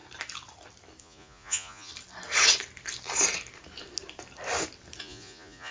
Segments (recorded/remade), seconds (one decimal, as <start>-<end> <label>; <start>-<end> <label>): 0.0-1.0 recorded; 1.0-1.9 remade; 1.9-5.0 recorded; 5.0-5.7 remade